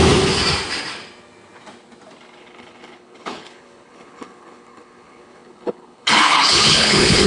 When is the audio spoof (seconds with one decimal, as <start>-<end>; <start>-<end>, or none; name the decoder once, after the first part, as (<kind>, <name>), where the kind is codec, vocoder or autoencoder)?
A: 2.4-7.3 (codec, HILCodec)